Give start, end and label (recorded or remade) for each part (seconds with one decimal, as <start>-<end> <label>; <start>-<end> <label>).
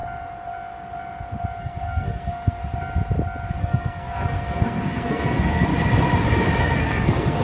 0.0-1.6 recorded; 1.6-2.6 remade; 2.6-3.6 recorded; 3.6-5.7 remade; 5.7-6.6 recorded; 6.6-7.4 remade